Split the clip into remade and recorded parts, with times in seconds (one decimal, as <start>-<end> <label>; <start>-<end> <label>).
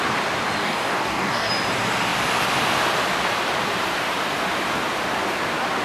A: 0.0-0.6 recorded; 0.6-1.5 remade; 1.5-5.8 recorded